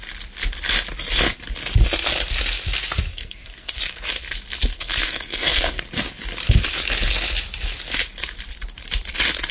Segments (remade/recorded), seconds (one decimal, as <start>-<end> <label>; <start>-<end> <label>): 0.0-3.1 recorded; 3.1-3.8 remade; 3.8-4.7 recorded; 4.7-5.8 remade; 5.8-9.5 recorded